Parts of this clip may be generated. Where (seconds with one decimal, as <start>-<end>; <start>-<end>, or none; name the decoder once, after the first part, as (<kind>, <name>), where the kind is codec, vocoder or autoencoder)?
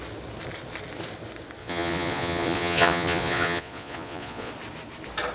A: 1.6-4.5 (vocoder, Vocos)